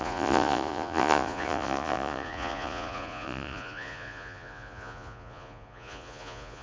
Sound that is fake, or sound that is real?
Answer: fake